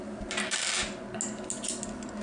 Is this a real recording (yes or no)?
yes